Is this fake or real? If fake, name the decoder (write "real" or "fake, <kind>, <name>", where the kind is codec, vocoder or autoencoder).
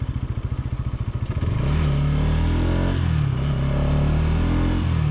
real